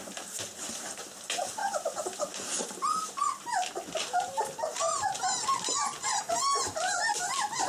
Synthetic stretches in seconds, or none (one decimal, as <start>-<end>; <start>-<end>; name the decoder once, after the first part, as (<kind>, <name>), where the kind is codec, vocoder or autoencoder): none